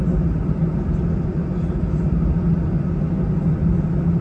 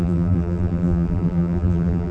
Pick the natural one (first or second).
first